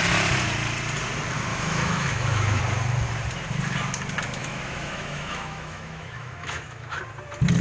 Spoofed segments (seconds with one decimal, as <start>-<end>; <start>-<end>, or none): 1.5-2.6; 4.4-7.0